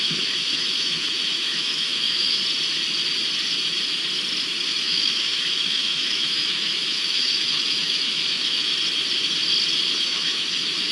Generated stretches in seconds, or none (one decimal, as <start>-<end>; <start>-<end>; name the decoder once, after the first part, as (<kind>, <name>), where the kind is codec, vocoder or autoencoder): 0.0-2.4 (autoencoder, DAC-VAE); 4.4-8.7; 10.0-10.9